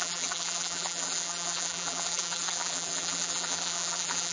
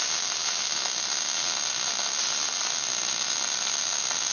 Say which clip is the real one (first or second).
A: second